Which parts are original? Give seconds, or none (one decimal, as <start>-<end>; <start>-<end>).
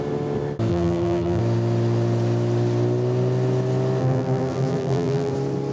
0.0-0.7; 1.4-4.0; 5.3-5.7